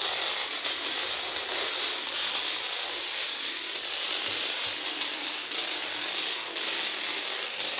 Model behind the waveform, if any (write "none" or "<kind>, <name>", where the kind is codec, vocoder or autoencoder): none